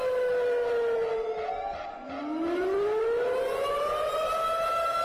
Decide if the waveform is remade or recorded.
recorded